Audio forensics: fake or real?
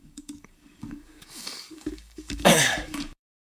fake